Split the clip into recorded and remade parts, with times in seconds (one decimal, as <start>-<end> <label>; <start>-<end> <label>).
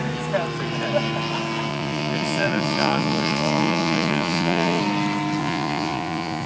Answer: 0.0-1.7 recorded; 1.7-4.8 remade; 4.8-5.4 recorded; 5.4-6.5 remade